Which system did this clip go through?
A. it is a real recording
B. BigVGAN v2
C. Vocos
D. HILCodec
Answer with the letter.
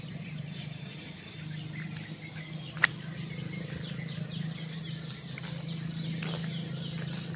A